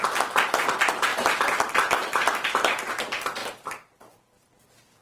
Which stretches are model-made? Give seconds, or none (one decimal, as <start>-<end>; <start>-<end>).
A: 1.1-2.9; 3.4-4.6